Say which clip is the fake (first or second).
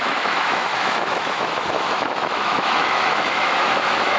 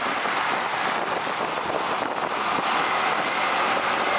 first